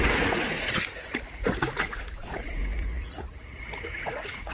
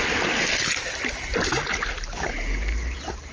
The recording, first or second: second